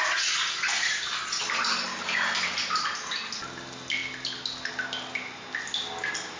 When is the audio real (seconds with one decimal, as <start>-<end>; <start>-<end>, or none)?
0.0-6.4